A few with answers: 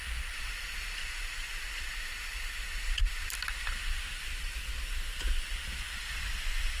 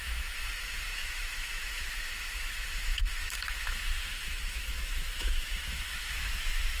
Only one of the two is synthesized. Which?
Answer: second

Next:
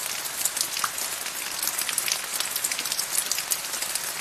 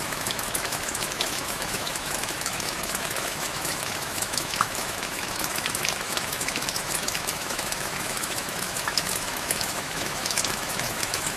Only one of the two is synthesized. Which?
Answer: second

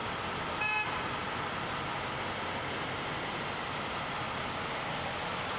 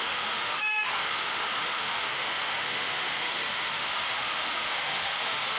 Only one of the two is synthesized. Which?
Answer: second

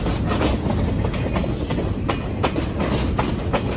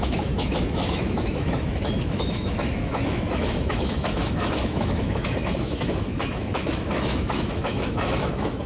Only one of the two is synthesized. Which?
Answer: second